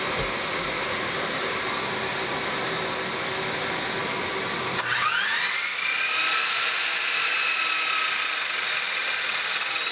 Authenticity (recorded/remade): recorded